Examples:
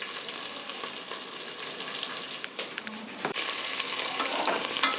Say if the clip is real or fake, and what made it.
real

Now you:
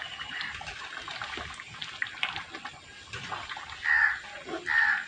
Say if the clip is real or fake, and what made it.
real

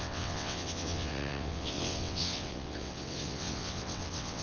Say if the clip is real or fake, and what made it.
fake, vocoder, WaveNeXt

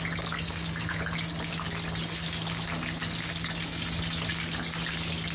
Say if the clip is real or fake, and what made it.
real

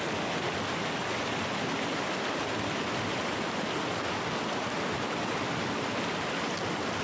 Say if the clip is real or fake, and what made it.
real